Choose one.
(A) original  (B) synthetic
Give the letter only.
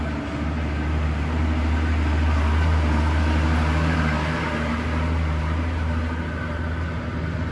A